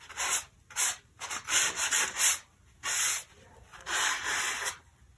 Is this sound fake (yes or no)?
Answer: no